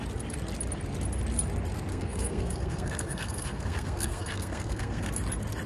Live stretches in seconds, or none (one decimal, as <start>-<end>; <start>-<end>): 0.0-1.9; 5.1-5.7